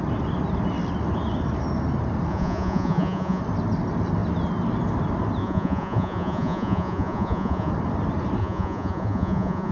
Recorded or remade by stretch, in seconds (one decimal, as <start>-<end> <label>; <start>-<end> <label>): 0.0-2.3 recorded; 2.3-3.4 remade; 3.4-5.4 recorded; 5.4-7.7 remade; 7.7-8.4 recorded; 8.4-9.7 remade